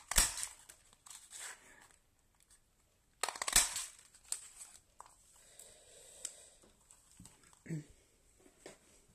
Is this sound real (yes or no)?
yes